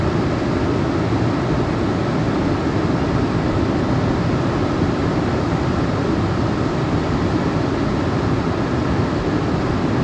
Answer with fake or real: real